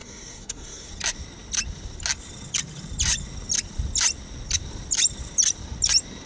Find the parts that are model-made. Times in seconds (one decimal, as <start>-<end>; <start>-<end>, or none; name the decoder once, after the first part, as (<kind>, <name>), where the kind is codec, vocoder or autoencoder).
0.0-0.9 (codec, SNAC)